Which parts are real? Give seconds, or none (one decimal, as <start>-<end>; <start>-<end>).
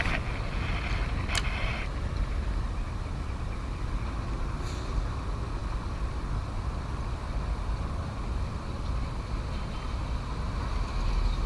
0.0-11.5